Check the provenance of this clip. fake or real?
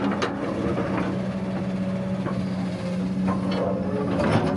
real